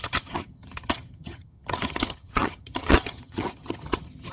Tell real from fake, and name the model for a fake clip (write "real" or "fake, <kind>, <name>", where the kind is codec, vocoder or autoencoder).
fake, vocoder, HiFi-GAN